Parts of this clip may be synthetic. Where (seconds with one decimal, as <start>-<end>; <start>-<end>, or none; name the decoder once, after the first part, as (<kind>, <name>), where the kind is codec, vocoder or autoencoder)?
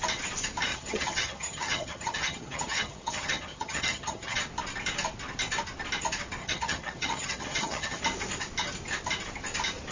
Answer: 0.7-4.4 (vocoder, HiFi-GAN); 6.4-8.0